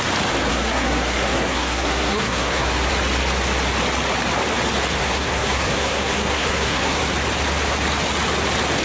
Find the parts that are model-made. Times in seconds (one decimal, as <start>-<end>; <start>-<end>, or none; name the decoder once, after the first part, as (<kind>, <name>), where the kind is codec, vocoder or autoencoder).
0.5-2.9 (codec, SNAC); 5.0-7.0